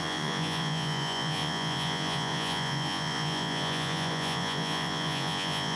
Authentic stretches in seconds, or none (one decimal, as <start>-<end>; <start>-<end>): none